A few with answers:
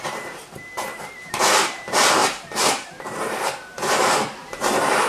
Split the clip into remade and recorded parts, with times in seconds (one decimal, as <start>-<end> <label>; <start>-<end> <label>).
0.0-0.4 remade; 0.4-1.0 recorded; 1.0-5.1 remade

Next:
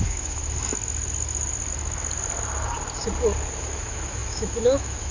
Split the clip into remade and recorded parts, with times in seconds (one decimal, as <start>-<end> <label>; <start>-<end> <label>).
0.0-0.4 remade; 0.4-3.5 recorded; 3.5-5.1 remade

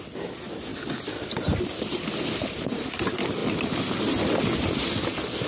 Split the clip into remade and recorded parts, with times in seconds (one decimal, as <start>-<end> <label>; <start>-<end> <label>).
0.0-5.5 recorded

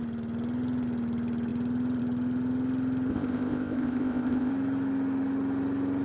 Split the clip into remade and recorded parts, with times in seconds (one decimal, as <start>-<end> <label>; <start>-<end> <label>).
0.0-3.1 recorded; 3.1-4.5 remade; 4.5-6.0 recorded

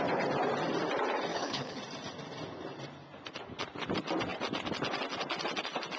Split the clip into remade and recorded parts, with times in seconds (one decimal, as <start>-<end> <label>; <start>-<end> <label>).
0.0-1.3 recorded; 1.3-1.8 remade; 1.8-6.0 recorded

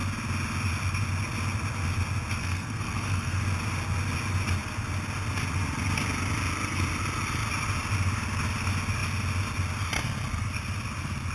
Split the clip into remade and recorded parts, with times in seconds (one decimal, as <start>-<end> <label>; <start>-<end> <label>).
0.0-2.4 recorded; 2.4-3.4 remade; 3.4-11.3 recorded

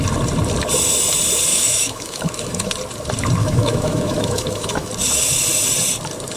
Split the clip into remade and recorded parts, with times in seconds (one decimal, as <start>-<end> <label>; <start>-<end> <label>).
0.0-1.5 recorded; 1.5-2.7 remade; 2.7-3.4 recorded; 3.4-4.9 remade; 4.9-6.4 recorded